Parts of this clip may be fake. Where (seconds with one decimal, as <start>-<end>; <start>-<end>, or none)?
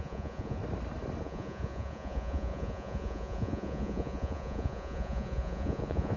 0.0-0.6; 1.2-6.2